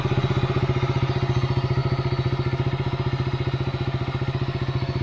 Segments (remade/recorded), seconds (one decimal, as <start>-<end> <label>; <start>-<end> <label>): 0.0-5.0 recorded